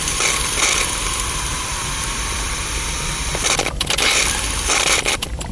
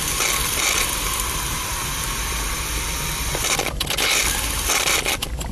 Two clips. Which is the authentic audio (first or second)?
second